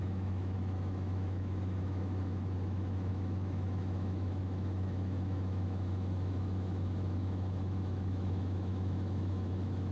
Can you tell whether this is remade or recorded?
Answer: remade